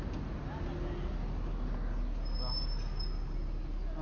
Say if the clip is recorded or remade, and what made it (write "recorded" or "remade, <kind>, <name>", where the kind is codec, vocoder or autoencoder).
recorded